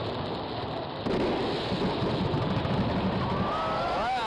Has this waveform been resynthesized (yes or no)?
no